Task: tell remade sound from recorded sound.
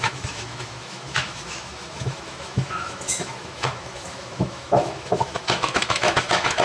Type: remade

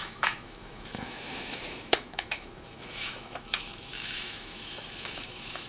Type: remade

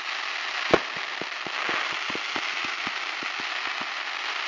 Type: recorded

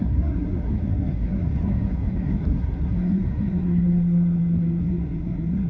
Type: remade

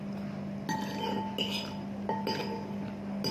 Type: recorded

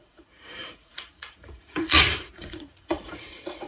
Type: remade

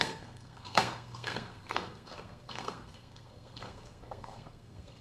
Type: remade